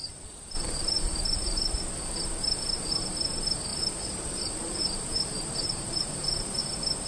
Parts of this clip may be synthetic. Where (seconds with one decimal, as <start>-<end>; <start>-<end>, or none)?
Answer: 0.0-1.8; 3.7-6.6